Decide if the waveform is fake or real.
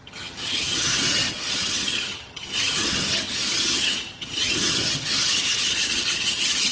fake